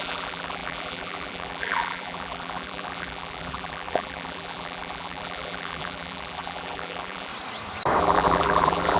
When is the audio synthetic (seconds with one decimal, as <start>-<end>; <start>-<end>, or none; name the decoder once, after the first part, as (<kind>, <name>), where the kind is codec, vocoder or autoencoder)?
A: 0.0-7.3 (vocoder, BigVGAN v2); 8.0-9.0